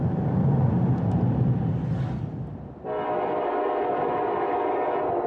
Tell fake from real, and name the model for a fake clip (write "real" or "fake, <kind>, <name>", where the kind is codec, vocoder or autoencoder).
real